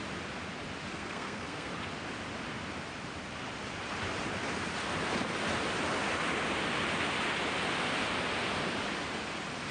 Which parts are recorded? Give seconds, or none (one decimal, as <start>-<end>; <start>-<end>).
0.0-0.9; 1.7-9.7